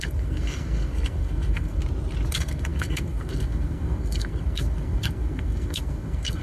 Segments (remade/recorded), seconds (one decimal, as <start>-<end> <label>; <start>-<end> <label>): 0.0-1.8 remade; 1.8-2.3 recorded; 2.3-6.4 remade